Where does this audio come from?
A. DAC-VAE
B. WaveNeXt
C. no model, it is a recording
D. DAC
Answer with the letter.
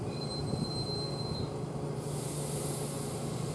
C